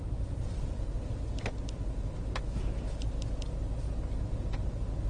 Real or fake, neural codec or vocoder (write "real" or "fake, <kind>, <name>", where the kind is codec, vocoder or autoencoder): real